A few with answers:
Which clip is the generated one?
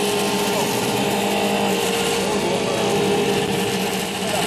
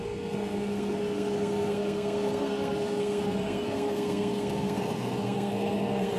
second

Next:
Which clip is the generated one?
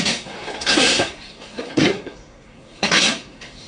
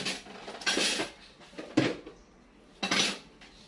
first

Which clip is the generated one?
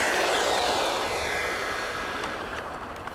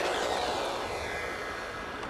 first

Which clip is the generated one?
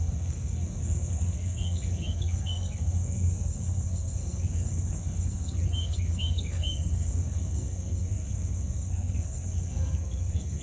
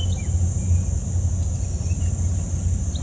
first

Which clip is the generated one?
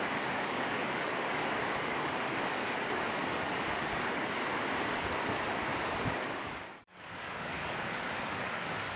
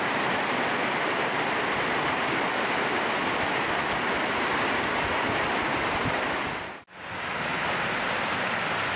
first